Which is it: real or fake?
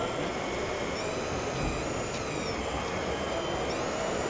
real